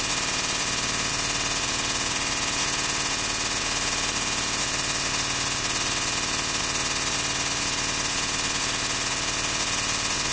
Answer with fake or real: real